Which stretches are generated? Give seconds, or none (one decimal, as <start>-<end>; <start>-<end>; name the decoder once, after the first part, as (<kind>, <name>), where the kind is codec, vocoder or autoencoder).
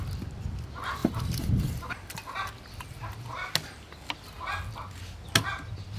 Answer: 1.0-2.5 (vocoder, BigVGAN v2)